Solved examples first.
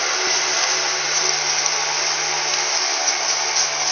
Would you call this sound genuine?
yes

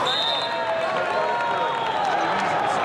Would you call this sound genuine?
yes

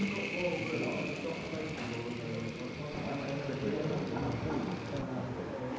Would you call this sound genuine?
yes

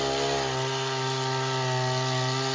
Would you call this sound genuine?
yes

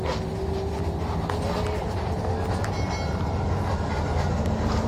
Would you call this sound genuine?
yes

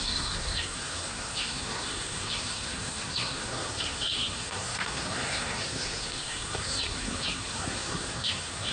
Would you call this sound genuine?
no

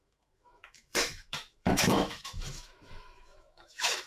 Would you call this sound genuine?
no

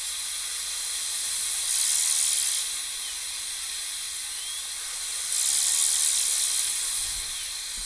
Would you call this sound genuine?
yes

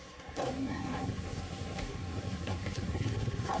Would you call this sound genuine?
no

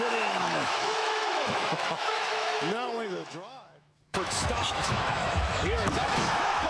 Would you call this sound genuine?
no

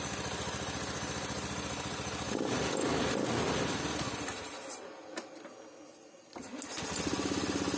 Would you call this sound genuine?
yes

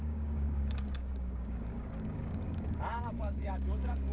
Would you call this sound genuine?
no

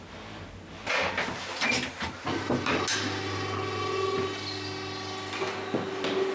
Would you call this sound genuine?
yes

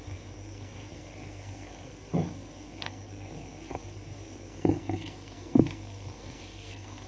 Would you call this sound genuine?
no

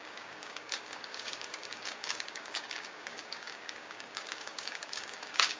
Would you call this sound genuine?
no